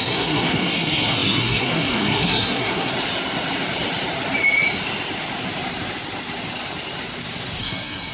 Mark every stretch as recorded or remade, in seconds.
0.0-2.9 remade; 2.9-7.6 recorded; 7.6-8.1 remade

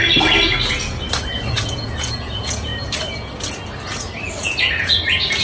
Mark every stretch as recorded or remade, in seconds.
0.0-1.5 recorded; 1.5-2.7 remade; 2.7-4.3 recorded; 4.3-5.4 remade

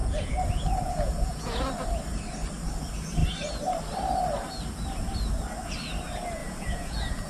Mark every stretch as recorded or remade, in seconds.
0.0-1.6 remade; 1.6-6.4 recorded; 6.4-7.3 remade

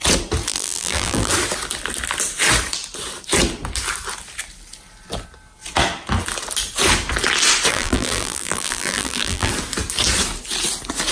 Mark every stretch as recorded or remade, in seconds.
0.0-0.5 recorded; 0.5-1.3 remade; 1.3-7.7 recorded; 7.7-9.5 remade; 9.5-11.1 recorded

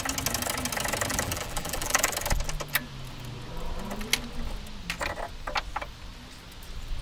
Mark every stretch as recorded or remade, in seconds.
0.0-1.1 recorded; 1.1-2.1 remade; 2.1-7.0 recorded

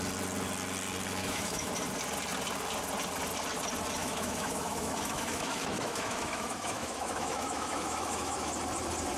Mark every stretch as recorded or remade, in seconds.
0.0-1.2 recorded; 1.2-1.7 remade; 1.7-4.0 recorded; 4.0-8.5 remade; 8.5-9.2 recorded

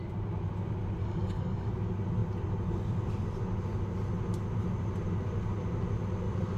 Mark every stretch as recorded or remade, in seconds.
0.0-1.0 recorded; 1.0-1.7 remade; 1.7-6.6 recorded